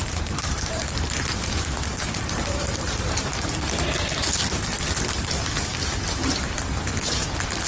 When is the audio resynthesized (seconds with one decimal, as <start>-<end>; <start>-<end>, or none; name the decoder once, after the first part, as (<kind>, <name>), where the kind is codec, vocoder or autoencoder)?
0.0-0.8 (vocoder, BigVGAN v2); 1.9-3.5; 4.7-5.3; 5.7-6.3